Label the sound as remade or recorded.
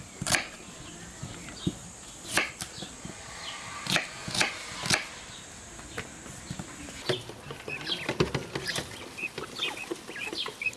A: recorded